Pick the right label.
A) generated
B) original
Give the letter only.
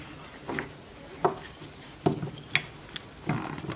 B